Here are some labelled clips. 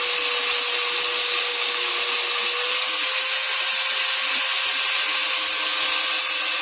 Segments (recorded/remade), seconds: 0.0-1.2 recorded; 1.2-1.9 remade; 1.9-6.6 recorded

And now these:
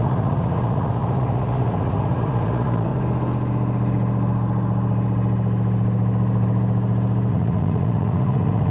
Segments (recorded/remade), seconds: 0.0-2.9 remade; 2.9-7.3 recorded; 7.3-8.7 remade